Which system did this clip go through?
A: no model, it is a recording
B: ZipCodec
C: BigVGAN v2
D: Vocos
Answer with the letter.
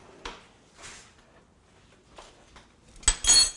A